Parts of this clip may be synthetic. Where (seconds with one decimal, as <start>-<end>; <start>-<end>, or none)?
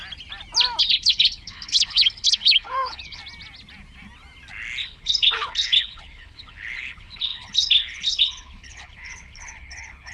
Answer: 0.8-3.2; 4.9-10.1